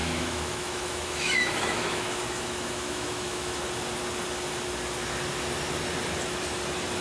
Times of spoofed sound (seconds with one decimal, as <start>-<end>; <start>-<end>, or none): 0.0-3.6